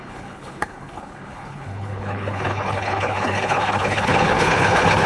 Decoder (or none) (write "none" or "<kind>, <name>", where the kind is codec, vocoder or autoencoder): codec, HILCodec